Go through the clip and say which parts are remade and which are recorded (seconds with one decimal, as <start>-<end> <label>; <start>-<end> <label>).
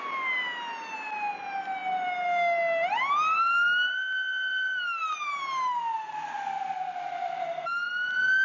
0.0-8.4 recorded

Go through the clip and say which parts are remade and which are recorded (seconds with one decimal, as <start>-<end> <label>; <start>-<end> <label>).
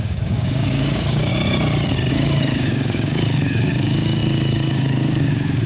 0.0-1.3 remade; 1.3-2.1 recorded; 2.1-5.7 remade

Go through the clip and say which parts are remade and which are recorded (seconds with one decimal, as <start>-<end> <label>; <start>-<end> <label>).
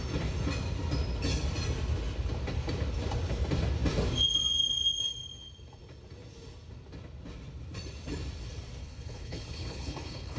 0.0-8.8 recorded; 8.8-10.4 remade